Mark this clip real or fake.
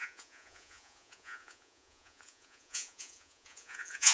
fake